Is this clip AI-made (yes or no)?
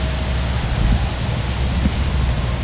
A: no